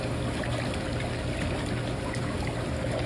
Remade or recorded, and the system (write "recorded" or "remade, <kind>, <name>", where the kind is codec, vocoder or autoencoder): recorded